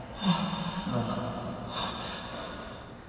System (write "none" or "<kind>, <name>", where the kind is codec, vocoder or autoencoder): none